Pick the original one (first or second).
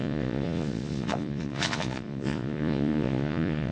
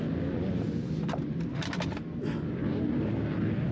second